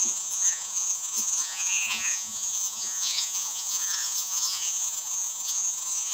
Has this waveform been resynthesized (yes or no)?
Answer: yes